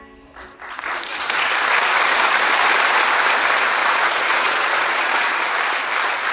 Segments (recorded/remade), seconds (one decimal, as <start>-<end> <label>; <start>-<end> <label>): 0.0-3.8 recorded; 3.8-5.3 remade; 5.3-6.3 recorded

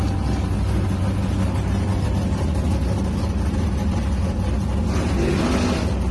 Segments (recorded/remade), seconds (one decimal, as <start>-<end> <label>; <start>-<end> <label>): 0.0-6.1 recorded

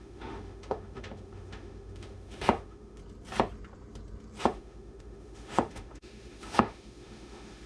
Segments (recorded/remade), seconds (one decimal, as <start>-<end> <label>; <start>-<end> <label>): 0.0-3.0 remade; 3.0-4.4 recorded; 4.4-7.7 remade

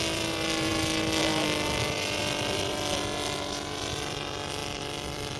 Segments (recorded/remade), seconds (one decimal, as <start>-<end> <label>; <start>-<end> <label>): 0.0-2.2 recorded; 2.2-2.9 remade; 2.9-4.6 recorded; 4.6-5.4 remade

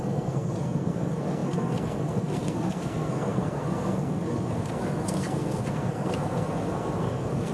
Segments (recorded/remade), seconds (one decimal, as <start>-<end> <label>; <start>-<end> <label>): 0.0-7.5 remade

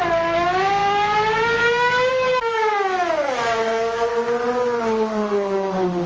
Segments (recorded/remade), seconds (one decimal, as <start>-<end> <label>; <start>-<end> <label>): 0.0-4.1 remade; 4.1-4.8 recorded; 4.8-6.1 remade

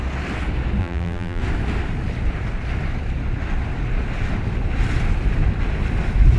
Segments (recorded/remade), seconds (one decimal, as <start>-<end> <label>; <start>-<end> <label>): 0.0-0.8 recorded; 0.8-1.4 remade; 1.4-6.4 recorded